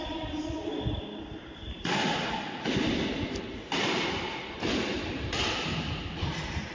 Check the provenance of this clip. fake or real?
real